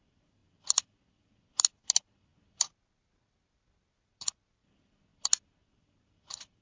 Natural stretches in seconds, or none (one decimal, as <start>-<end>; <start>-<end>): 0.0-2.3; 4.5-5.1